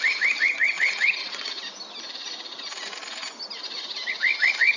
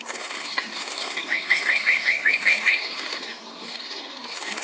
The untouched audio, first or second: first